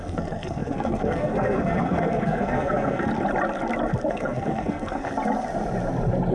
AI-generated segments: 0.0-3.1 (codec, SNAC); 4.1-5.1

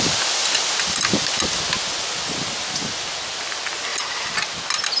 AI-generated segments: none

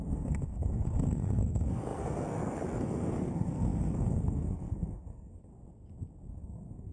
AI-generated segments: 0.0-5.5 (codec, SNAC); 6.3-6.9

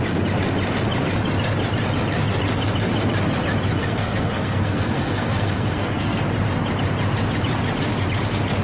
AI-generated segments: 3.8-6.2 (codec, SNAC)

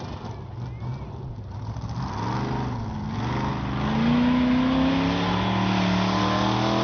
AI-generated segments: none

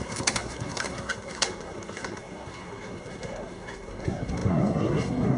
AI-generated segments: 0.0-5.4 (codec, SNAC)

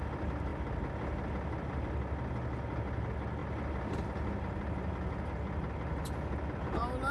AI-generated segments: none